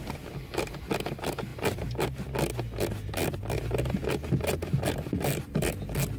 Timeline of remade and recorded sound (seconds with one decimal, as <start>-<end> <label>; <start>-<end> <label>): 0.0-6.2 recorded